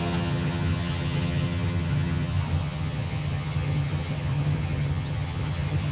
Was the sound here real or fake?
fake